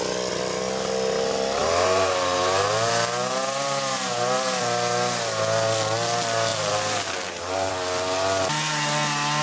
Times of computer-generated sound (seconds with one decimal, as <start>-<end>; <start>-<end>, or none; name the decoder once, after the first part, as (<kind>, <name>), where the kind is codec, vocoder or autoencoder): 1.6-4.6 (vocoder, BigVGAN v2); 6.5-7.7